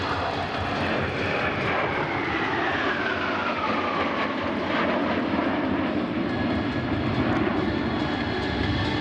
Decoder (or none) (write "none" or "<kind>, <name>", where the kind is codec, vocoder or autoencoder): none